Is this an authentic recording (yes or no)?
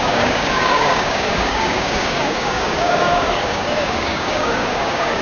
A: no